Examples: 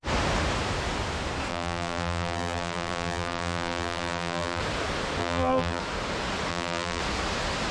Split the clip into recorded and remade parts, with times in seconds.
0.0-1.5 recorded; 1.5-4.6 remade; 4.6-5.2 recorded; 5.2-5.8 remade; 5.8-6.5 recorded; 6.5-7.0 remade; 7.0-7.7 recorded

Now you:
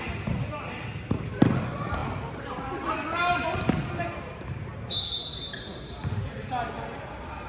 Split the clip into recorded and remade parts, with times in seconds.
0.0-7.5 recorded